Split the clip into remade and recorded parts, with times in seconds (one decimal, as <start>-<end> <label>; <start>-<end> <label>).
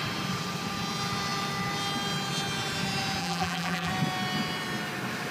0.0-3.2 recorded; 3.2-3.9 remade; 3.9-5.3 recorded